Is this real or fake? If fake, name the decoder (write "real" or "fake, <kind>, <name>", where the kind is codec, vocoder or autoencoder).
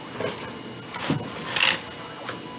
real